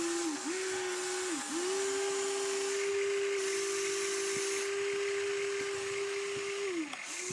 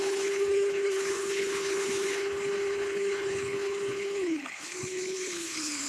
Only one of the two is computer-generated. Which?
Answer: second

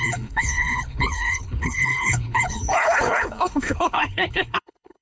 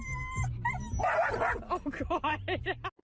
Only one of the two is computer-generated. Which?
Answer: first